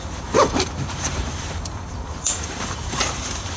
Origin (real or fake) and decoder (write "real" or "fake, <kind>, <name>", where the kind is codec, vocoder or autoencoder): fake, vocoder, BigVGAN v2